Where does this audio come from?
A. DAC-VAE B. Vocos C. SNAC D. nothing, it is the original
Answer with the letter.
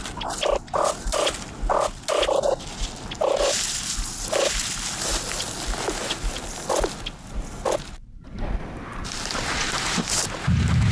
D